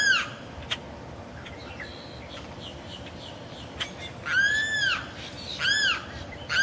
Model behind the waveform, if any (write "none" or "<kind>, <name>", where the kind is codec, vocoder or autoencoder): none